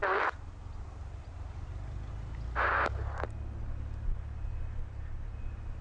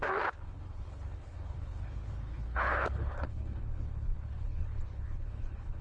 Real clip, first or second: first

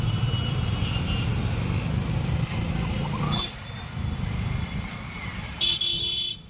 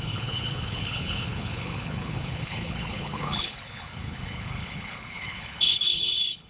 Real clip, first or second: first